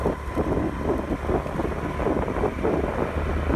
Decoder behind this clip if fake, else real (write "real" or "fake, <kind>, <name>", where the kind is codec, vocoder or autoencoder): real